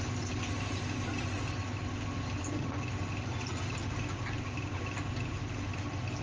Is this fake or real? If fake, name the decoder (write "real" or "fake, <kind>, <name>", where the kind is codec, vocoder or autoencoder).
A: real